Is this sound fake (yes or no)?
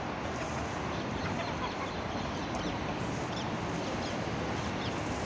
yes